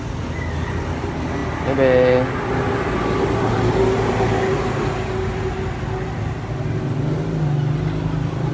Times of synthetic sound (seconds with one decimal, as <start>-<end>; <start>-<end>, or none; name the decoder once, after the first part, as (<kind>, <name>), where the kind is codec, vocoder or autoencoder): none

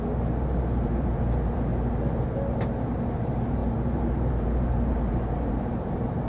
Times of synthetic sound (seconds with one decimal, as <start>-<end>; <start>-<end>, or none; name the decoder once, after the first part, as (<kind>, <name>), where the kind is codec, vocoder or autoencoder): 0.0-6.3 (vocoder, BigVGAN v2)

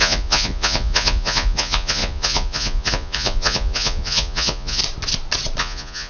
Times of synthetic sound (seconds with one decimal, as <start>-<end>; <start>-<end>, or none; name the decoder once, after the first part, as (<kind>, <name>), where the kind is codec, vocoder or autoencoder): 0.0-4.8 (vocoder, Vocos); 5.6-6.1

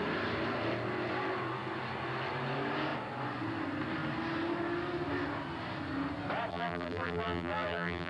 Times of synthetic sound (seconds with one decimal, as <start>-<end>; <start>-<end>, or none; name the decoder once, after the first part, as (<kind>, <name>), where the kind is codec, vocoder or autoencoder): 6.5-8.1 (vocoder, BigVGAN v2)

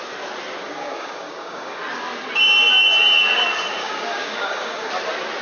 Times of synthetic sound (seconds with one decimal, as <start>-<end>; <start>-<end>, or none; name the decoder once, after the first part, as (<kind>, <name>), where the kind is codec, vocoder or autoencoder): 0.6-1.8 (codec, DAC); 3.8-4.9

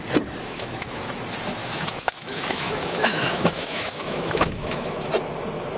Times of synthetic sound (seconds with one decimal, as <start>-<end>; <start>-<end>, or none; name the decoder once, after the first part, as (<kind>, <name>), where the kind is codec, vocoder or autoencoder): 0.4-1.0 (autoencoder, DAC-VAE); 1.6-5.1

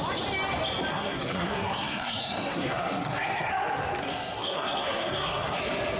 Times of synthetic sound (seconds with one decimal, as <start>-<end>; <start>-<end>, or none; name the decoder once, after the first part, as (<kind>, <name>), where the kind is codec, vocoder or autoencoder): 0.9-3.5 (codec, SNAC); 4.0-5.6

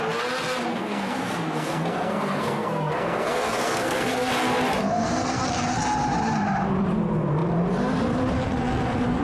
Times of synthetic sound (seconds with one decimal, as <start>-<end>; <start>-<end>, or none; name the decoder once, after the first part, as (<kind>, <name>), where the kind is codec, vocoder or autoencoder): 0.7-4.3 (codec, SNAC); 4.8-5.4